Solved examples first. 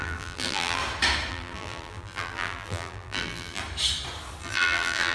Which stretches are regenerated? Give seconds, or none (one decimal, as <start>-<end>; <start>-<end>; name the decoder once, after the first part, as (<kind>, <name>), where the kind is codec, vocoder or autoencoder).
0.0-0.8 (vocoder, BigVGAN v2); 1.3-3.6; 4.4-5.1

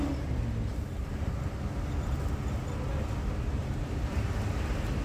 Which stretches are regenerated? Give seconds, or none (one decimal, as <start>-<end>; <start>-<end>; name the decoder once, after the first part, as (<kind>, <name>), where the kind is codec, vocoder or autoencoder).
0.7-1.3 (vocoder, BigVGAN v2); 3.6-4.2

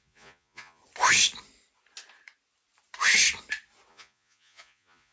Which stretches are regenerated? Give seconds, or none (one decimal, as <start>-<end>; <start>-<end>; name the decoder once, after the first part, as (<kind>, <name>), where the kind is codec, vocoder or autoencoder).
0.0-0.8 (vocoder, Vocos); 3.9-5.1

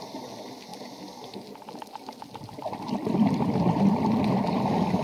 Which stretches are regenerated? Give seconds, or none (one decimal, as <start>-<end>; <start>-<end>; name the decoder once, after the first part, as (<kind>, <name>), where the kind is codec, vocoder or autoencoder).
none

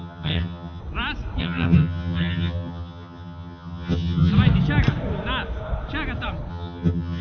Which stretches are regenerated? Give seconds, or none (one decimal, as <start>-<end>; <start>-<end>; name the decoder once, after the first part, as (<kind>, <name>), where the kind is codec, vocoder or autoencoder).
0.0-0.8 (vocoder, HiFi-GAN); 1.4-4.3; 6.5-7.2

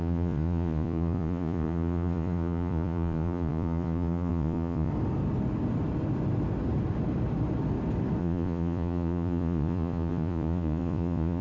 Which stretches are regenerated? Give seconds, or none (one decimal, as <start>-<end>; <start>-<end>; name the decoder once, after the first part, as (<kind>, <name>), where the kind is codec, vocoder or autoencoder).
0.0-4.9 (vocoder, Vocos); 8.2-11.4